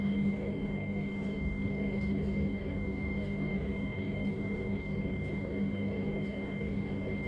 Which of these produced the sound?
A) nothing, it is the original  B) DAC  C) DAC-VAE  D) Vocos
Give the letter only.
B